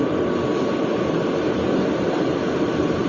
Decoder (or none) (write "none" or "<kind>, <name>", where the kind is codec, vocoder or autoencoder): none